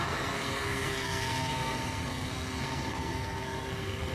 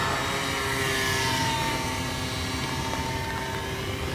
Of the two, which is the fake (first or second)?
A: first